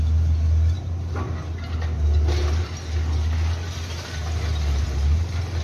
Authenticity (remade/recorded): recorded